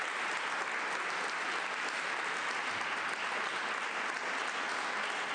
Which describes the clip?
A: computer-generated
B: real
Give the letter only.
B